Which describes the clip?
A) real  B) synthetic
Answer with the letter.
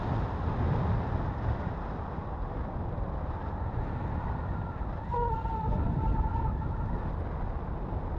A